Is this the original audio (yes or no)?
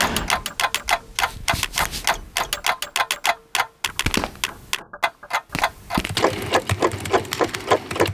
yes